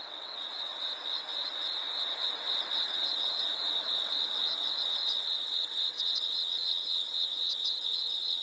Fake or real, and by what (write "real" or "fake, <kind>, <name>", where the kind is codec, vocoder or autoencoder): fake, vocoder, WaveNeXt